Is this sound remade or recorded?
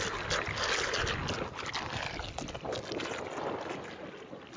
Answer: recorded